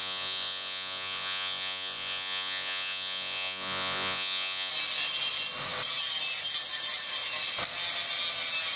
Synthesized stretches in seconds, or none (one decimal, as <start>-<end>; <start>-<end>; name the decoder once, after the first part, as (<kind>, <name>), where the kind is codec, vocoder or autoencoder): 0.0-4.7 (vocoder, Vocos)

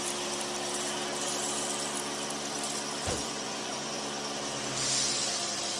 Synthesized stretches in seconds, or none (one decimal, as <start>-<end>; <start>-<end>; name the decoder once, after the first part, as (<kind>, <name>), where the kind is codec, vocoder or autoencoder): 3.2-4.0 (vocoder, Vocos)

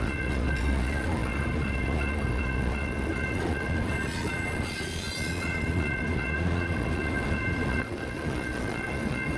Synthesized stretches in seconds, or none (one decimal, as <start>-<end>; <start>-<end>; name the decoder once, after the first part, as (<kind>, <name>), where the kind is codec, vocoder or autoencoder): 0.0-9.4 (vocoder, Vocos)

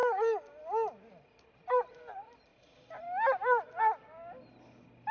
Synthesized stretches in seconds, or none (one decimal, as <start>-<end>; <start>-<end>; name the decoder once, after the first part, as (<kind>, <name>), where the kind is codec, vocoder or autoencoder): none

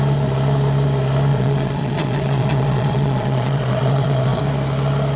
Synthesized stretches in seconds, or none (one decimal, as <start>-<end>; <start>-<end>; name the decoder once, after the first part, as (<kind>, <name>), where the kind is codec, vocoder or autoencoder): 1.3-4.4 (vocoder, Vocos)

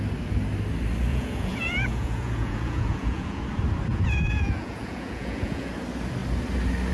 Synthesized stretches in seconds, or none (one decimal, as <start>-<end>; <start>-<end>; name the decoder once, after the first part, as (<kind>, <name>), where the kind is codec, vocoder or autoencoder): 1.1-3.4 (vocoder, Vocos); 3.9-5.7

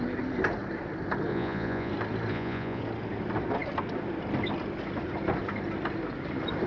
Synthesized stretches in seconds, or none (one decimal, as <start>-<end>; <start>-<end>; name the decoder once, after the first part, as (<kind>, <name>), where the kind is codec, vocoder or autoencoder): 1.3-1.9 (vocoder, Vocos); 2.3-2.8

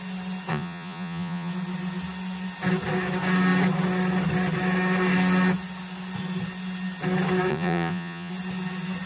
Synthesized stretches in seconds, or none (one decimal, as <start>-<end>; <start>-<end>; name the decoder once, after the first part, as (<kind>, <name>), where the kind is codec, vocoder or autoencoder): 0.5-1.5 (vocoder, Vocos); 7.5-8.3